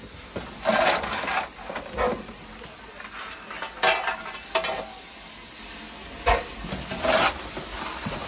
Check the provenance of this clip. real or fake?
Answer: real